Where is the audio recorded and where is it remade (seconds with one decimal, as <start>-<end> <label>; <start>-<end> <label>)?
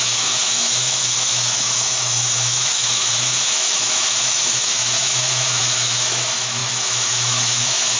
0.0-8.0 remade